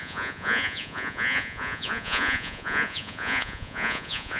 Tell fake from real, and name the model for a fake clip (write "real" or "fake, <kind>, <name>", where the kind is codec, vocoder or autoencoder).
fake, vocoder, Vocos